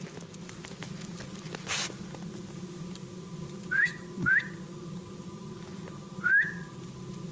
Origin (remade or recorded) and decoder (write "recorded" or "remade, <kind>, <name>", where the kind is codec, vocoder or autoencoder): recorded